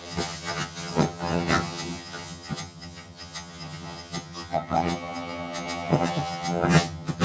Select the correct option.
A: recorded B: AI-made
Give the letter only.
B